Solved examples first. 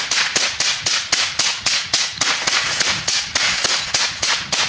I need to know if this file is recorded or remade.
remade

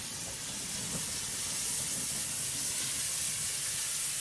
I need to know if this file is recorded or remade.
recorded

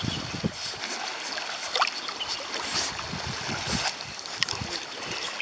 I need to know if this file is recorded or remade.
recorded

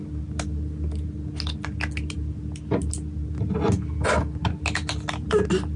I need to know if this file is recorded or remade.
recorded